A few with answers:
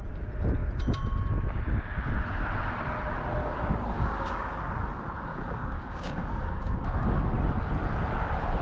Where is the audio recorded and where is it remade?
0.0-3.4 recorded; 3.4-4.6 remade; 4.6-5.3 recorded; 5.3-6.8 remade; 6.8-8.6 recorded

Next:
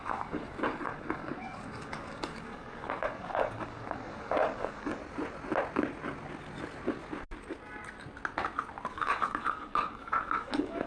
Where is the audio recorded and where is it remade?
0.0-5.0 remade; 5.0-8.9 recorded; 8.9-10.9 remade

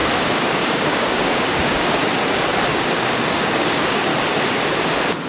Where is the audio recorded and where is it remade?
0.0-2.0 remade; 2.0-2.7 recorded; 2.7-4.1 remade; 4.1-5.3 recorded

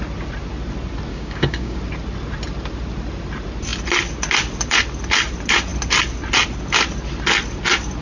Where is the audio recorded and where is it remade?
0.0-1.1 recorded; 1.1-1.8 remade; 1.8-8.0 recorded

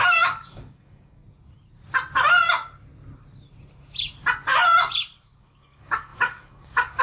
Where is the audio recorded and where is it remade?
0.0-1.2 remade; 1.2-5.4 recorded; 5.4-7.0 remade

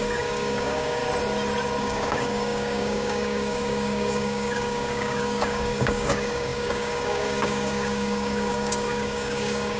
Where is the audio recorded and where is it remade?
0.0-1.0 remade; 1.0-1.8 recorded; 1.8-9.8 remade

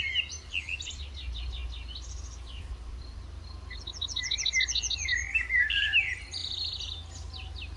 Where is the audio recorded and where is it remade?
0.0-5.3 recorded; 5.3-6.0 remade; 6.0-7.8 recorded

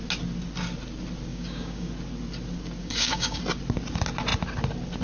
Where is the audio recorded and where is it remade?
0.0-1.3 recorded; 1.3-1.9 remade; 1.9-2.8 recorded; 2.8-3.4 remade; 3.4-5.0 recorded